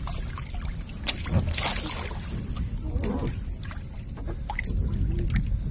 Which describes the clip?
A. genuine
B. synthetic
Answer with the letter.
A